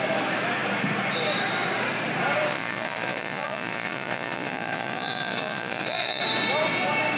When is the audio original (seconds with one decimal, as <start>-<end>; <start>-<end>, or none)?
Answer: 0.0-2.5; 6.2-7.2